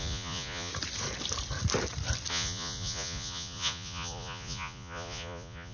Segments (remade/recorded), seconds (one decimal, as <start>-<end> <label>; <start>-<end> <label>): 0.0-0.7 remade; 0.7-2.3 recorded; 2.3-5.7 remade